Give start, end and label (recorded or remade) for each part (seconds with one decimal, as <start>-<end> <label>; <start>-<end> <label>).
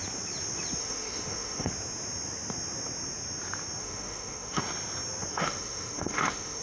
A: 0.0-0.8 recorded; 0.8-1.7 remade; 1.7-3.8 recorded; 3.8-4.6 remade; 4.6-5.3 recorded; 5.3-6.6 remade